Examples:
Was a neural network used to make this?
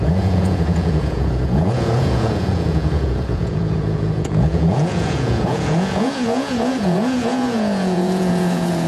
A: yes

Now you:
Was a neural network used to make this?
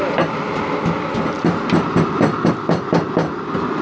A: no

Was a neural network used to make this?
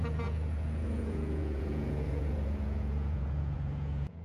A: yes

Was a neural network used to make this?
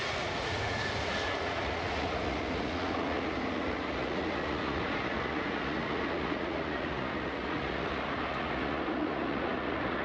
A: yes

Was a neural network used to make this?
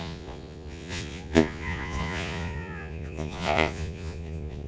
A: yes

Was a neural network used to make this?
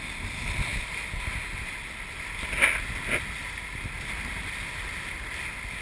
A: no